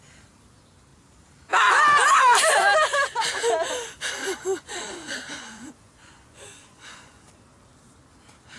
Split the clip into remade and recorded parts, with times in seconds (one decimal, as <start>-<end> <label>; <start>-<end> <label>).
0.0-4.2 recorded; 4.2-7.2 remade; 7.2-8.6 recorded